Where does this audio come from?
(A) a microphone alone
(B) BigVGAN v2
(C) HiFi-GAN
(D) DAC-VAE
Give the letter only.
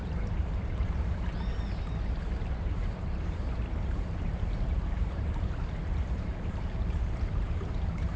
B